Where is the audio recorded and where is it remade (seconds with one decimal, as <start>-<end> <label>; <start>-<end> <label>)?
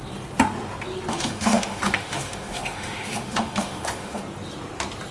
0.0-1.1 recorded; 1.1-4.2 remade; 4.2-5.1 recorded